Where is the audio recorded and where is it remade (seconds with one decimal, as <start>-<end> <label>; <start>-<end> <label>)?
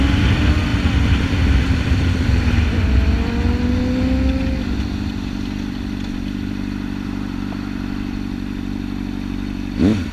0.0-0.7 recorded; 0.7-3.3 remade; 3.3-10.1 recorded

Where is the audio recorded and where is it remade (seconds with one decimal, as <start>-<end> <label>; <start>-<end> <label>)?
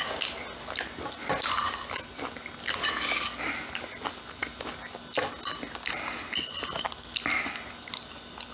0.0-8.5 recorded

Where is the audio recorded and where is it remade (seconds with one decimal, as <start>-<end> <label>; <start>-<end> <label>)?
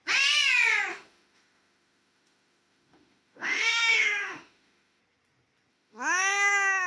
0.0-0.9 recorded; 0.9-5.0 remade; 5.0-5.7 recorded; 5.7-6.9 remade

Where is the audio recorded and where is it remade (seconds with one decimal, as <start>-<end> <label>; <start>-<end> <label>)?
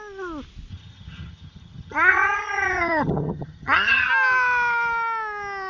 0.0-0.7 recorded; 0.7-4.1 remade; 4.1-5.7 recorded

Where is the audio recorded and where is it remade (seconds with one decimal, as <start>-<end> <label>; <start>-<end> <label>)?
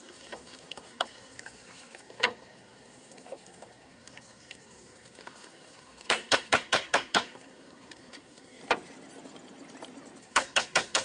0.0-8.6 remade; 8.6-10.2 recorded; 10.2-11.0 remade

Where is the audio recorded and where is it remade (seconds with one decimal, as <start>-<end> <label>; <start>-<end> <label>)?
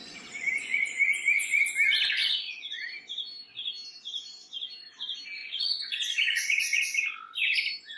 0.0-1.6 remade; 1.6-2.2 recorded; 2.2-2.9 remade; 2.9-5.4 recorded; 5.4-6.8 remade; 6.8-8.0 recorded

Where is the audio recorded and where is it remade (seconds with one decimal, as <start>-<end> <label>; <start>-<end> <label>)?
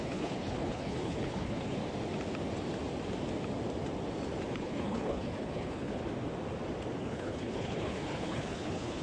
0.0-1.8 remade; 1.8-4.5 recorded; 4.5-6.0 remade; 6.0-7.0 recorded; 7.0-9.0 remade